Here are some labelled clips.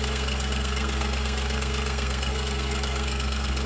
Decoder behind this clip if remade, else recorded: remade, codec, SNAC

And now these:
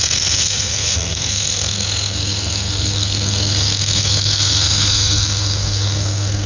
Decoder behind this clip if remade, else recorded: remade, codec, SNAC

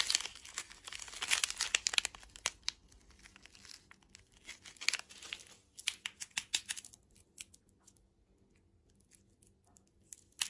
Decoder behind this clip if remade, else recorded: recorded